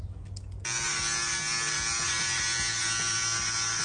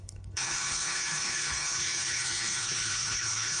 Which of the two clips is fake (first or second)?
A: second